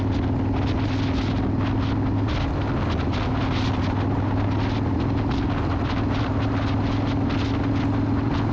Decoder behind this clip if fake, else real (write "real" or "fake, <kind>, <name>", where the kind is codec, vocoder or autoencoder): real